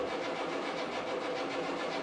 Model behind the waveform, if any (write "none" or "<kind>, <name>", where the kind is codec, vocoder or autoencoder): none